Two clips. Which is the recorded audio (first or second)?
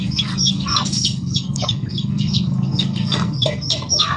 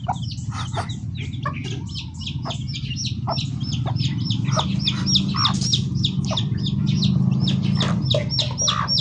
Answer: second